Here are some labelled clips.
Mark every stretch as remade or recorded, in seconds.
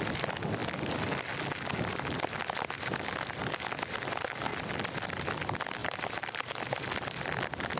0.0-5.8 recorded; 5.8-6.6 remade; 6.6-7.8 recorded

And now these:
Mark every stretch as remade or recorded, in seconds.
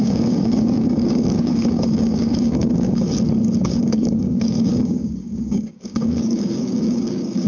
0.0-3.1 remade; 3.1-3.6 recorded; 3.6-7.5 remade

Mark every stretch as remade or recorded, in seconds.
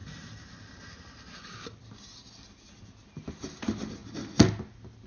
0.0-5.1 recorded